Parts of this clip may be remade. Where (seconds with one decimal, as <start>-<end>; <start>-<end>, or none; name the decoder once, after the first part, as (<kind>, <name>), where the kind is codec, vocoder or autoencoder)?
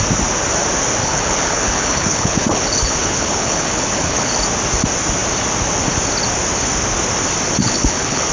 1.0-4.4 (codec, HILCodec); 7.6-8.3